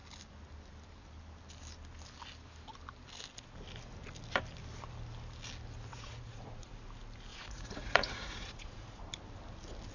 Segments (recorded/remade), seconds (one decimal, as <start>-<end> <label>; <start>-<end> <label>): 0.0-5.9 recorded; 5.9-6.7 remade; 6.7-7.3 recorded; 7.3-9.0 remade; 9.0-9.9 recorded